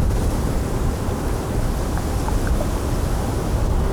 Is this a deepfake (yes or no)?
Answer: no